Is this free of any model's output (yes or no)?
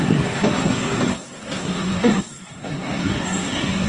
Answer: no